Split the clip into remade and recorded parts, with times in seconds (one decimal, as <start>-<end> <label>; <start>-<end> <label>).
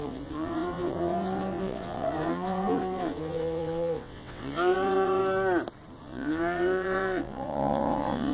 0.0-5.2 remade; 5.2-6.0 recorded; 6.0-8.3 remade